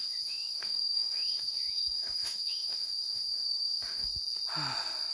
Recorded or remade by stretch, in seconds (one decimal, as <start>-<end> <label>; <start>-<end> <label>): 0.0-4.1 remade; 4.1-5.1 recorded